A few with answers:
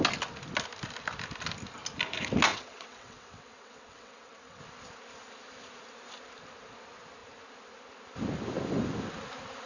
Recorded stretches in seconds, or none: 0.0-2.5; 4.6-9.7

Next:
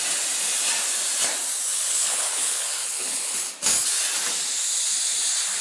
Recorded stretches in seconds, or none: 0.0-1.7; 3.5-5.6

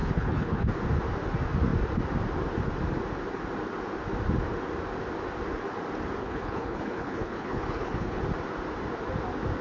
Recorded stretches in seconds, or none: 0.7-6.2; 8.2-9.6

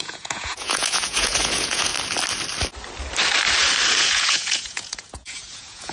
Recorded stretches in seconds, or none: 1.9-4.0

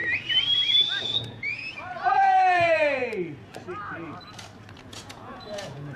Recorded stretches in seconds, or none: 0.0-1.0; 3.0-4.8

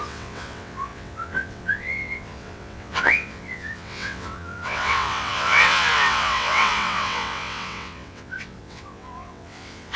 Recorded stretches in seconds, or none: none

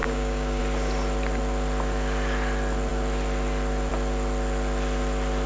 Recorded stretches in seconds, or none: 0.6-5.5

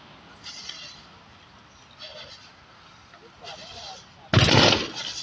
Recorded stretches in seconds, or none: 0.0-5.2